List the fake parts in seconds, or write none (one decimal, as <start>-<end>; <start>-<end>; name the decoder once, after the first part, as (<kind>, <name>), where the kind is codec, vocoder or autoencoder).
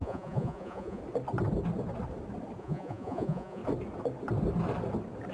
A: 0.0-1.0 (vocoder, Vocos); 2.6-3.6